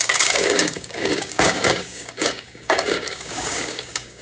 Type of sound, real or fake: fake